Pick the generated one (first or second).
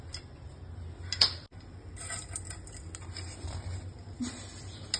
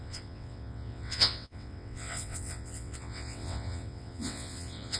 second